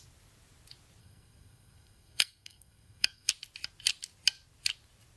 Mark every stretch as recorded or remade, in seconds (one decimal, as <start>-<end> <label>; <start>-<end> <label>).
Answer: 0.0-1.0 recorded; 1.0-3.3 remade; 3.3-5.2 recorded

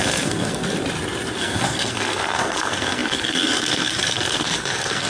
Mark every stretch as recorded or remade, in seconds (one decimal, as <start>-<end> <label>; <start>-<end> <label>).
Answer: 0.0-0.6 remade; 0.6-1.4 recorded; 1.4-5.1 remade

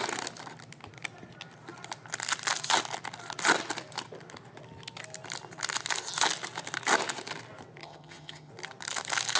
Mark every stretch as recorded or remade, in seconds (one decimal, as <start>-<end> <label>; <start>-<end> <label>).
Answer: 0.0-7.8 recorded; 7.8-8.5 remade; 8.5-9.4 recorded

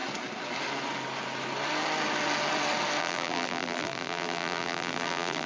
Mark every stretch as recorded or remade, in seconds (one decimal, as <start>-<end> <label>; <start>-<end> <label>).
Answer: 0.0-3.0 recorded; 3.0-5.5 remade

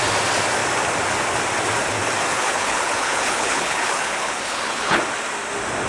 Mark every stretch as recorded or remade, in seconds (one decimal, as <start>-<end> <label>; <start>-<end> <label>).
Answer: 0.0-2.3 recorded; 2.3-5.0 remade; 5.0-5.9 recorded

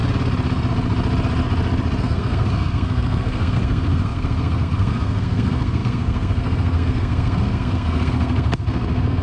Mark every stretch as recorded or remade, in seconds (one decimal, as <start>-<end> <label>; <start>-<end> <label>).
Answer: 0.0-2.0 recorded; 2.0-9.2 remade

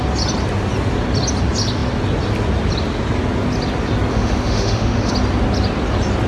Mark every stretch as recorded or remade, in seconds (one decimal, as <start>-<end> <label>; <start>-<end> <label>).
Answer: 0.0-4.1 recorded; 4.1-5.1 remade; 5.1-6.3 recorded

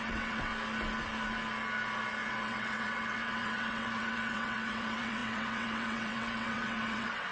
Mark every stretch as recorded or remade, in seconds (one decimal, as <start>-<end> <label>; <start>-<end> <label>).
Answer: 0.0-0.5 remade; 0.5-2.3 recorded; 2.3-7.3 remade